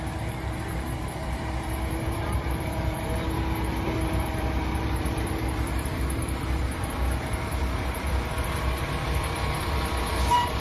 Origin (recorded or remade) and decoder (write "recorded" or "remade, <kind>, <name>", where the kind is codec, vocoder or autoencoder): remade, vocoder, BigVGAN v2